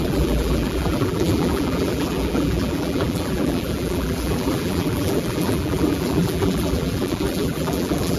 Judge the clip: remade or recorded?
remade